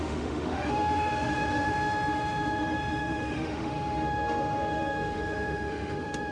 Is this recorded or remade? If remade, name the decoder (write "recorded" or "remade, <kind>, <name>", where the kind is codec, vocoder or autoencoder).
remade, autoencoder, DAC-VAE